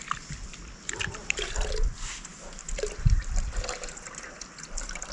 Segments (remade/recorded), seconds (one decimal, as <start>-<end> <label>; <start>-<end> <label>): 0.0-5.1 recorded